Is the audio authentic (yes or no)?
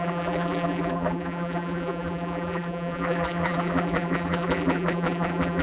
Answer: no